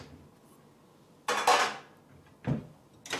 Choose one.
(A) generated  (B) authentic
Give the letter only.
B